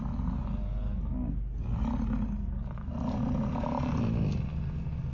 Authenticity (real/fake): real